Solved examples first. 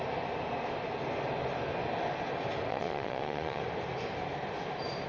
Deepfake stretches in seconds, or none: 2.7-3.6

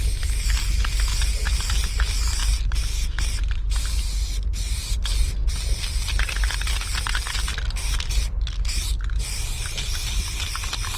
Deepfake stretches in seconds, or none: none

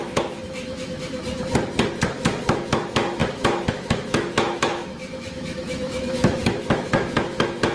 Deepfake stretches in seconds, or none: 0.0-1.2; 2.1-7.7

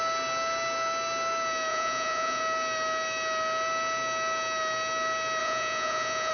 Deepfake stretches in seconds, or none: 1.7-2.4; 5.4-6.3

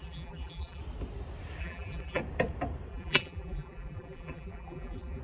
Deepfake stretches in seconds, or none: 0.0-0.8; 1.6-2.2; 2.9-5.2

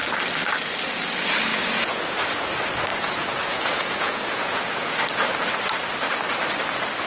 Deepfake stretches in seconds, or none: 1.5-2.5; 2.9-4.9

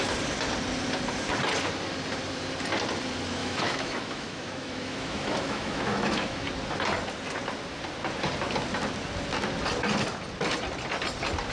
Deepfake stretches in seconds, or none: 3.4-6.5

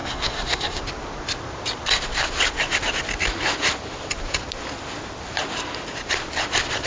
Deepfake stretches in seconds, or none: 0.0-0.8